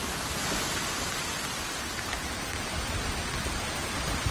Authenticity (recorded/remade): recorded